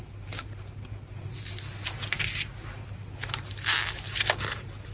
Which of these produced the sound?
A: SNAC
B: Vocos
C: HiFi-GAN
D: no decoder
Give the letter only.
D